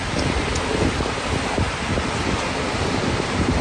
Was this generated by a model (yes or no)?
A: no